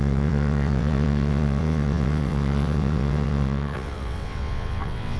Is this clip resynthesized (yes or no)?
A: yes